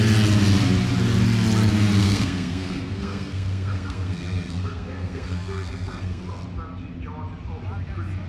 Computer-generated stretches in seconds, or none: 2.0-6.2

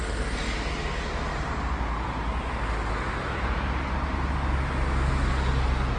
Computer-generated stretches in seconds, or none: none